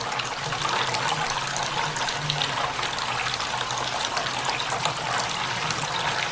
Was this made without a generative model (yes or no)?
yes